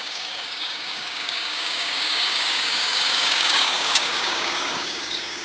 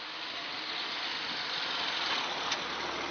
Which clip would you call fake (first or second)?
first